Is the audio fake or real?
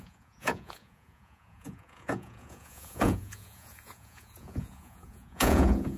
fake